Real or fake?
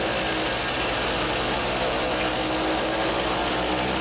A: real